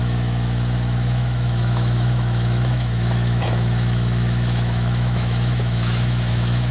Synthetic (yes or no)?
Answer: yes